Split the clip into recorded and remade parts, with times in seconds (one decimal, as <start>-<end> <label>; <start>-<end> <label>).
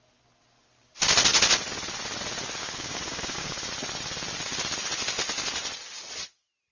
0.0-2.6 recorded; 2.6-3.7 remade; 3.7-6.7 recorded